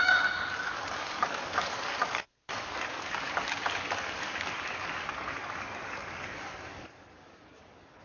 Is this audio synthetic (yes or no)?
yes